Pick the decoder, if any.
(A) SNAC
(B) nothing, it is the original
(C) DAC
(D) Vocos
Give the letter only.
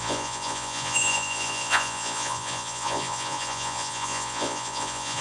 D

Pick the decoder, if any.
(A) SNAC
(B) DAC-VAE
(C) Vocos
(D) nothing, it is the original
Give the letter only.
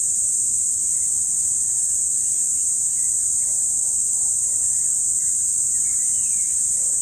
D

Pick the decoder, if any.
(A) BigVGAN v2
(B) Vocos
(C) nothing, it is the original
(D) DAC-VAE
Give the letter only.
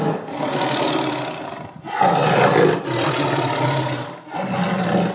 C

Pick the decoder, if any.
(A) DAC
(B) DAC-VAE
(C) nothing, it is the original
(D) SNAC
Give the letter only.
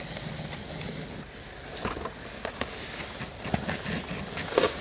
C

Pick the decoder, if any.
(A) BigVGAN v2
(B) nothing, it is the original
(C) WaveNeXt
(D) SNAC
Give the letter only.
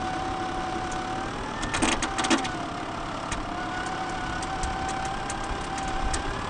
B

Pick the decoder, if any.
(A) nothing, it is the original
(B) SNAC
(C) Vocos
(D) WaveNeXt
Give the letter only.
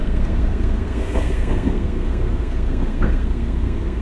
B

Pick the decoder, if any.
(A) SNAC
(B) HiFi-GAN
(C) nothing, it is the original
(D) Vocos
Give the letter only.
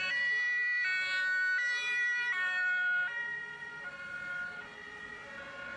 C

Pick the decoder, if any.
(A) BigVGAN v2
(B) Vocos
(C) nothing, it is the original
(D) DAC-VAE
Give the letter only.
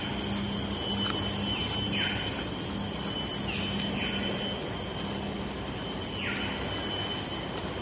C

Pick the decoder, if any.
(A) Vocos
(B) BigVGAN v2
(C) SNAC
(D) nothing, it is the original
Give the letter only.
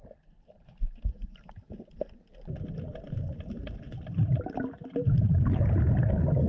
D